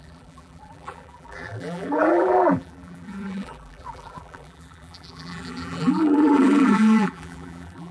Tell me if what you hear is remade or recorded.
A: remade